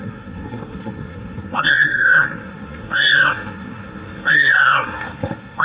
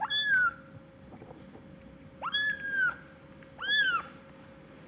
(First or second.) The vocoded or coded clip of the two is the first